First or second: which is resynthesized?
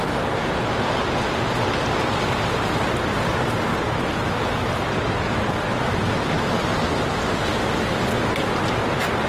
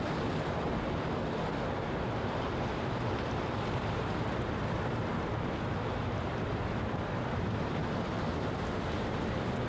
second